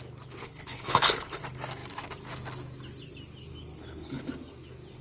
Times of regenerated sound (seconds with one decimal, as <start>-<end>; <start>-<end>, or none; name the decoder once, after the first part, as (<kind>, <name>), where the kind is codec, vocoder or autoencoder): 0.4-1.4 (codec, HILCodec); 3.7-4.3